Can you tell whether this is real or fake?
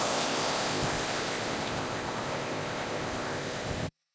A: fake